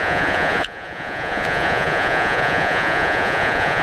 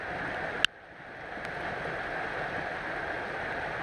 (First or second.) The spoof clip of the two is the first